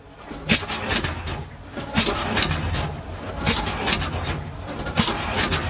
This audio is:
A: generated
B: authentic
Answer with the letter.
B